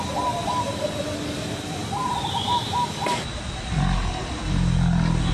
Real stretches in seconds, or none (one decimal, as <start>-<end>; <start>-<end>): 0.0-5.3